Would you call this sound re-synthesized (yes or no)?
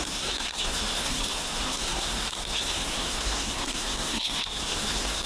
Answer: yes